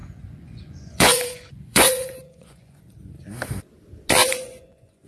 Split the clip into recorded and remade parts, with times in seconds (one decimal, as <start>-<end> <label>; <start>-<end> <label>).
0.0-2.8 remade; 2.8-4.2 recorded; 4.2-5.1 remade